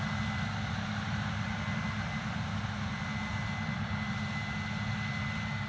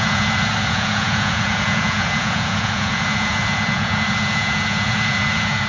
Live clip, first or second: first